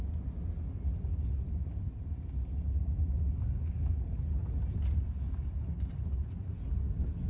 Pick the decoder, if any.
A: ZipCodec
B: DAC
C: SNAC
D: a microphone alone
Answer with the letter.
D